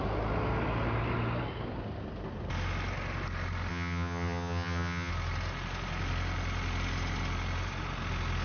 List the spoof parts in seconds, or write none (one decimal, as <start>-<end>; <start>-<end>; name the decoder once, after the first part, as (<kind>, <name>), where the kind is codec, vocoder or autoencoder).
3.7-5.1 (vocoder, HiFi-GAN)